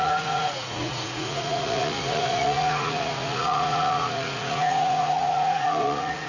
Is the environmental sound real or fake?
fake